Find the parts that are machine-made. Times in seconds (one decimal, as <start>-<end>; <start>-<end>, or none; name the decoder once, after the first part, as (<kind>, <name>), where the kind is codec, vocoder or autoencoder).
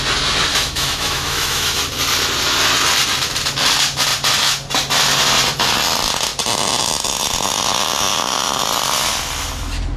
0.5-1.8 (autoencoder, DAC-VAE)